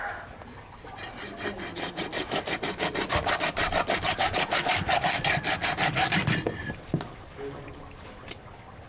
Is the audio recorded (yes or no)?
yes